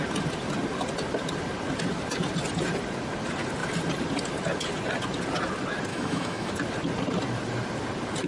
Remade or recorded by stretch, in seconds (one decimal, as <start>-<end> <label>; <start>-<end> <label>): 0.0-5.9 recorded; 5.9-6.5 remade; 6.5-8.3 recorded